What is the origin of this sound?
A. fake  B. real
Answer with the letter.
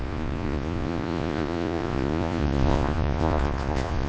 A